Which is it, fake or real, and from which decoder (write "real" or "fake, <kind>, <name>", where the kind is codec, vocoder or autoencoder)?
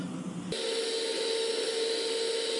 real